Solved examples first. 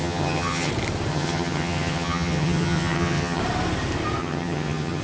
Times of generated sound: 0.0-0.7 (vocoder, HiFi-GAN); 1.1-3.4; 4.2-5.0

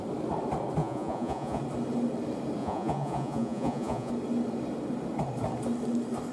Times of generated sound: 0.8-1.6 (vocoder, Vocos); 2.6-4.1

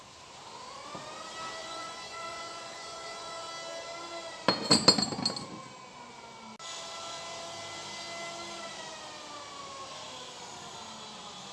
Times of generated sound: 1.6-3.5 (vocoder, Vocos)

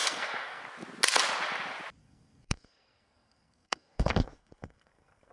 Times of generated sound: 0.0-0.6 (codec, SNAC); 2.0-5.3